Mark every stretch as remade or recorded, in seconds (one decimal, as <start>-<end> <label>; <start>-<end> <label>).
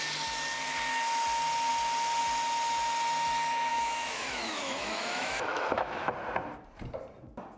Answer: 0.0-3.7 recorded; 3.7-6.1 remade; 6.1-7.6 recorded